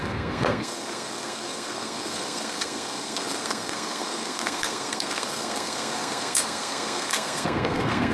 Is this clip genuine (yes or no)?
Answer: no